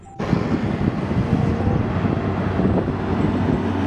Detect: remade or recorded recorded